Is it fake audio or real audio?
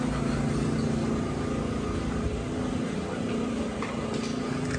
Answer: real